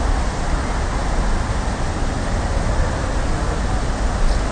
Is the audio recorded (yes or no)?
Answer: yes